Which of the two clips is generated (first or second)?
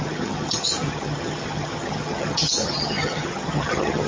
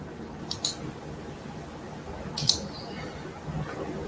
first